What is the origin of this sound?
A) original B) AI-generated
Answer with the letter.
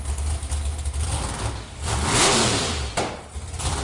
A